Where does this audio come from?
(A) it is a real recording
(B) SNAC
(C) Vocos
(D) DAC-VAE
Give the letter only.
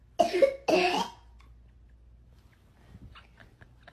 A